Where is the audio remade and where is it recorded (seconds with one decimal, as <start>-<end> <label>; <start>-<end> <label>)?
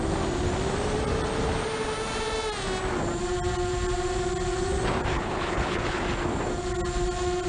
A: 0.0-5.1 recorded; 5.1-6.0 remade; 6.0-7.5 recorded